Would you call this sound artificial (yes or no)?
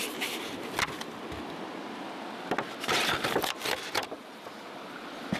no